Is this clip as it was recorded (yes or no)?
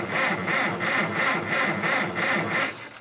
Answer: yes